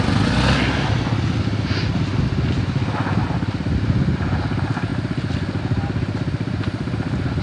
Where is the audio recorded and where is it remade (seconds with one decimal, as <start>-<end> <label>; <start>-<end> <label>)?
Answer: 0.0-7.4 recorded